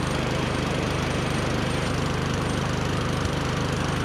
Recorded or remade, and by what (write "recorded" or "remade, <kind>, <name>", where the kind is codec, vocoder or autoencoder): remade, vocoder, BigVGAN v2